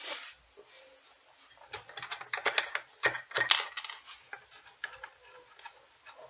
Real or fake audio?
real